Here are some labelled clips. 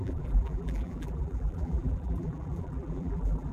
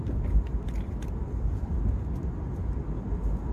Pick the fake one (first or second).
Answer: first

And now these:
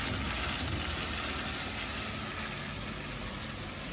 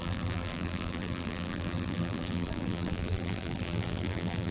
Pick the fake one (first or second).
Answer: second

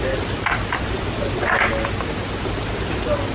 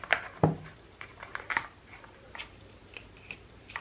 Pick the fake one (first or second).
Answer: second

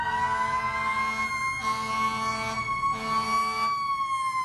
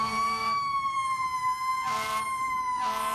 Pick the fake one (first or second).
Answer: second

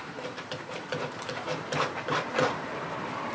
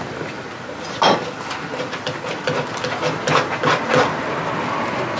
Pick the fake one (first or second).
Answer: first